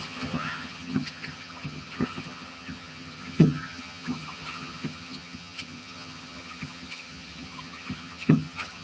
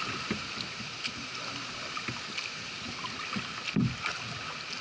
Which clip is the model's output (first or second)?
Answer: first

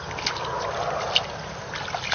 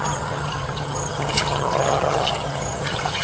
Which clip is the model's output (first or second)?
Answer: second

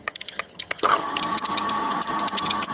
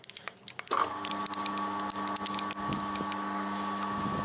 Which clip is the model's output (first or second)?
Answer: first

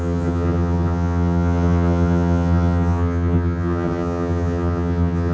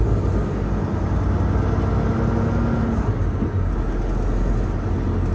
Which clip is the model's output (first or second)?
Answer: first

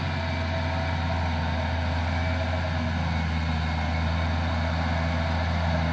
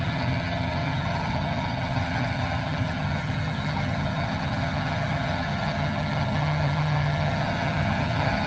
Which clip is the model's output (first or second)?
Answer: second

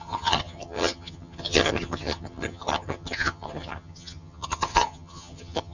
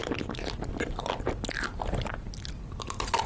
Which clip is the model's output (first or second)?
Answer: first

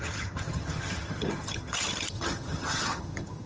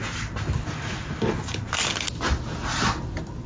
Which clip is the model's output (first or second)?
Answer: first